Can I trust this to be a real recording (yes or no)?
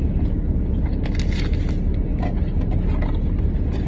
yes